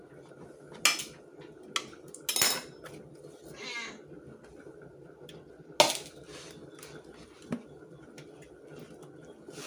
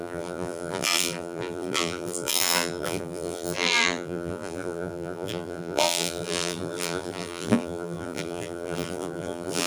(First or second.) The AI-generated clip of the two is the second